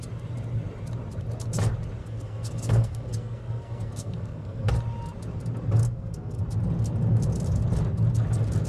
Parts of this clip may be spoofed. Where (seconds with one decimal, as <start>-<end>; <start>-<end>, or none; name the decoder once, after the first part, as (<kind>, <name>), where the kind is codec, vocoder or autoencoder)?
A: 2.0-4.7 (codec, SNAC); 5.8-6.4